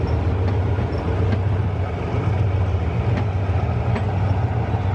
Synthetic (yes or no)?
no